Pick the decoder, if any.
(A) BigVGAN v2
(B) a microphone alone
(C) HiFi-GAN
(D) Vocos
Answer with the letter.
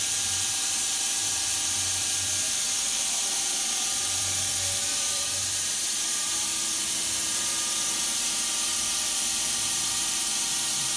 A